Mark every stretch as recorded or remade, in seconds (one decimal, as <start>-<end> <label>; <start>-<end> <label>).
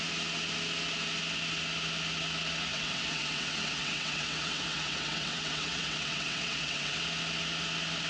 0.0-2.7 recorded; 2.7-7.0 remade; 7.0-8.1 recorded